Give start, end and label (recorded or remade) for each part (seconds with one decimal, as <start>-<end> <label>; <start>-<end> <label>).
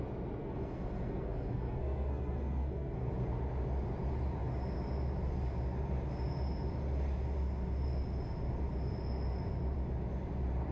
0.0-0.4 recorded; 0.4-3.1 remade; 3.1-10.7 recorded